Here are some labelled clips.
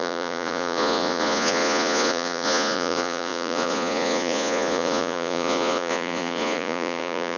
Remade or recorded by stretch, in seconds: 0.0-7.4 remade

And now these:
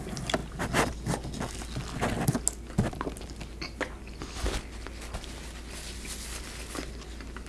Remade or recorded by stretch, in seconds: 0.0-7.5 recorded

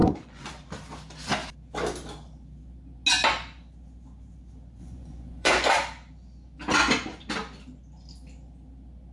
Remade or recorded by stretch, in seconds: 0.0-0.5 remade; 0.5-4.8 recorded; 4.8-5.7 remade; 5.7-9.1 recorded

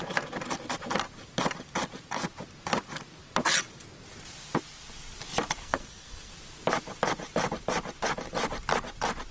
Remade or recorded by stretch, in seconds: 0.0-5.6 recorded; 5.6-6.3 remade; 6.3-9.3 recorded

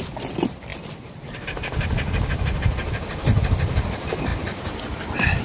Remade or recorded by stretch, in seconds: 0.0-5.4 recorded